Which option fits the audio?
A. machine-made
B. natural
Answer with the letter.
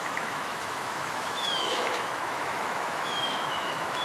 A